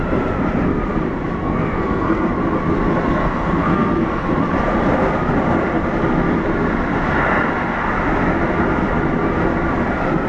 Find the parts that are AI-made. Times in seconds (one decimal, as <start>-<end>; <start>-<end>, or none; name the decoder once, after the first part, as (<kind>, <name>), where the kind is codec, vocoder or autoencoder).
1.4-2.3 (codec, SNAC); 3.2-4.3